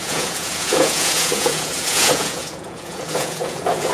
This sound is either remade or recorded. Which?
remade